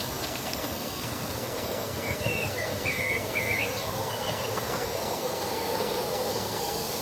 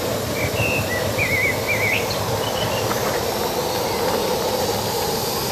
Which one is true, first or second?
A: second